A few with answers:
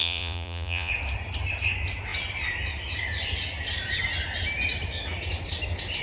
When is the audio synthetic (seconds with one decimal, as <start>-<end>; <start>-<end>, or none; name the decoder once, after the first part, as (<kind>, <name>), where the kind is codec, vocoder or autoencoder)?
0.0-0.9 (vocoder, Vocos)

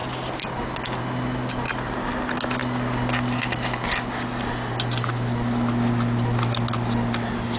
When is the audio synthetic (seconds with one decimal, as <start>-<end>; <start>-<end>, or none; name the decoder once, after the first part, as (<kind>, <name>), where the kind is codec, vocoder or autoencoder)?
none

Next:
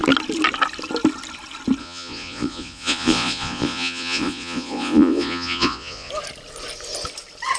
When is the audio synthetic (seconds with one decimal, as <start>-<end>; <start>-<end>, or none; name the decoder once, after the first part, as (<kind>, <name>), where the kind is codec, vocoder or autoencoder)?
1.8-6.1 (vocoder, Vocos)

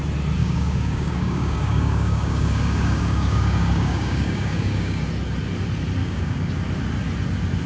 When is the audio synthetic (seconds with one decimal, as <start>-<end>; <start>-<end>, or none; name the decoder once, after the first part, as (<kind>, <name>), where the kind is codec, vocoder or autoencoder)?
0.4-5.0 (codec, DAC); 6.0-6.5